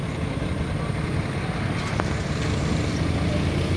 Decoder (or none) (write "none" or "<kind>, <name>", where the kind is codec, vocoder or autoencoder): none